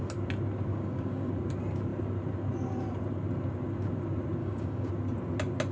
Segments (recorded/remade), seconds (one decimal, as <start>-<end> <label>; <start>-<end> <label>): 0.0-0.7 recorded; 0.7-1.3 remade; 1.3-4.4 recorded; 4.4-4.9 remade; 4.9-5.7 recorded